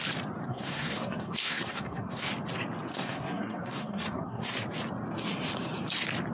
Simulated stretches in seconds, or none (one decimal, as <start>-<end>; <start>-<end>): 0.4-2.2; 2.9-4.5